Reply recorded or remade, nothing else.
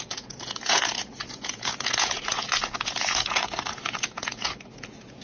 remade